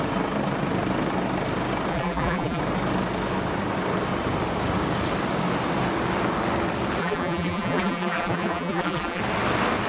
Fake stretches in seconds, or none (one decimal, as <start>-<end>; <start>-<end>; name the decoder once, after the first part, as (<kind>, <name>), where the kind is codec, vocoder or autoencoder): 1.9-2.6 (vocoder, BigVGAN v2); 7.0-9.2